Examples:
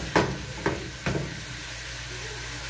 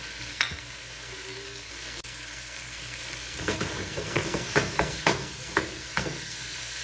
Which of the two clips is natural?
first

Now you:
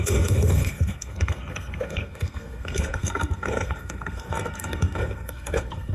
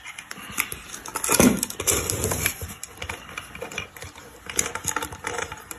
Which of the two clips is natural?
second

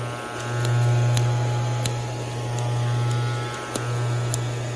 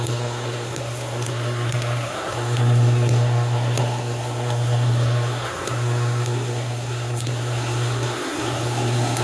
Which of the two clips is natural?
first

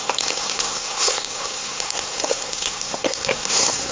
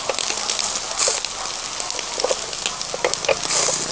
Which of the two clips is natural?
second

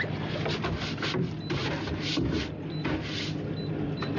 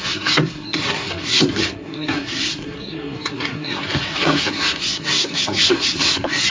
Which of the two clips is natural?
first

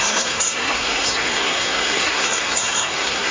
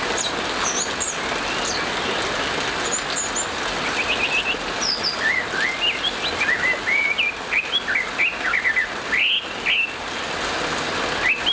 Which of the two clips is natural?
second